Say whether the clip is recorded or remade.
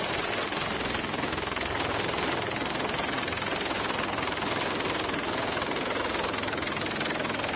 recorded